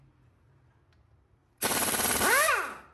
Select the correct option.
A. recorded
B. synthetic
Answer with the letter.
A